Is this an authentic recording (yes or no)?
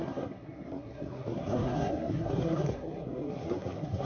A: no